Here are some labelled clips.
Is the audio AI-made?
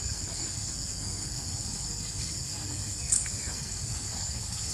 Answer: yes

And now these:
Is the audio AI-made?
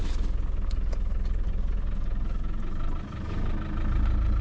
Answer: no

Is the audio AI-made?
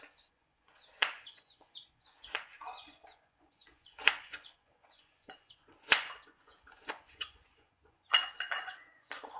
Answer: yes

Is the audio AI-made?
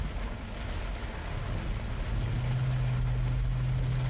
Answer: no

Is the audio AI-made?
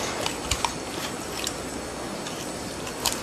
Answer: no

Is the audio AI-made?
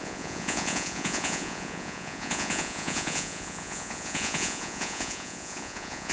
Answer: yes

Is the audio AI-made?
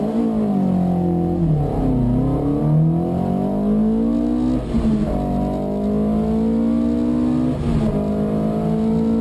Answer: no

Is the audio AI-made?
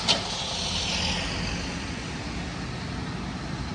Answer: no